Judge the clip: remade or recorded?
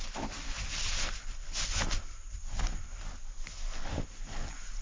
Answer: recorded